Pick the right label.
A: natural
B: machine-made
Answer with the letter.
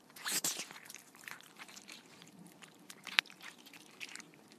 B